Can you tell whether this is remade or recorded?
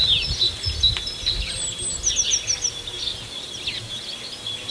recorded